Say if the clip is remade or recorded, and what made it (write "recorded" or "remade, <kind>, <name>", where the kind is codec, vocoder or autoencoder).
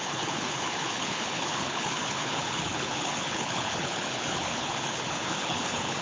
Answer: remade, codec, HILCodec